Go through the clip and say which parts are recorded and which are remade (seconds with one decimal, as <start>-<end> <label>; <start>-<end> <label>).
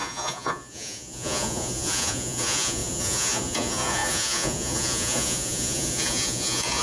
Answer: 0.0-6.8 remade